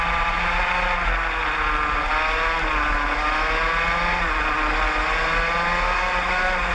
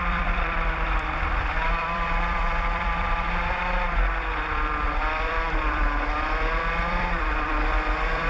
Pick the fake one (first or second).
second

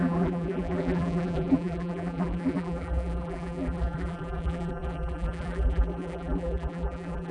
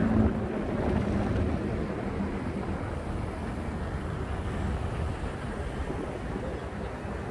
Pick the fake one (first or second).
first